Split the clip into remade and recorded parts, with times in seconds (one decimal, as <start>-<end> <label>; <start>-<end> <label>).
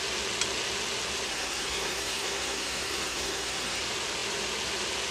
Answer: 0.0-1.3 recorded; 1.3-3.8 remade; 3.8-5.1 recorded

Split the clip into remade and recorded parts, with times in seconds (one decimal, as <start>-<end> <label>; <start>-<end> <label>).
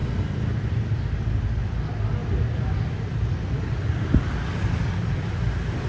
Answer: 0.0-5.9 recorded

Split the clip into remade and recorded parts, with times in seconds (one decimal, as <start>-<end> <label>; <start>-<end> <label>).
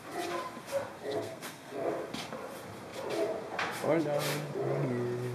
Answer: 0.0-0.9 recorded; 0.9-1.9 remade; 1.9-5.3 recorded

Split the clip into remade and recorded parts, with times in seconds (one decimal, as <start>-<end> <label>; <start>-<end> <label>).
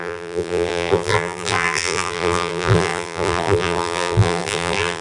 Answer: 0.0-5.0 remade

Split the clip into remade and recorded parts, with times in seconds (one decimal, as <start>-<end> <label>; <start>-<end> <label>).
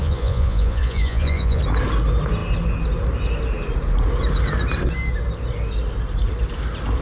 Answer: 0.0-1.6 remade; 1.6-7.0 recorded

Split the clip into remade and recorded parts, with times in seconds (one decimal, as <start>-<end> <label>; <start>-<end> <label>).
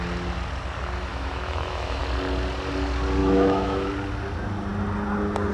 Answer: 0.0-1.1 recorded; 1.1-2.0 remade; 2.0-3.2 recorded; 3.2-3.9 remade; 3.9-5.5 recorded